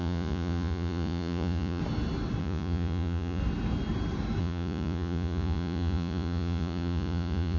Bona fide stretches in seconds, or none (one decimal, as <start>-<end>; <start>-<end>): 1.8-2.4; 3.4-4.4